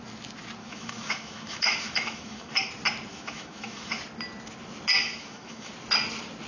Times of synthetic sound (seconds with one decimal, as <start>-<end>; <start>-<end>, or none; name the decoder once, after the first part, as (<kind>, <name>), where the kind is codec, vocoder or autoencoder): 0.6-2.7 (autoencoder, DAC-VAE); 3.1-4.0; 5.0-5.7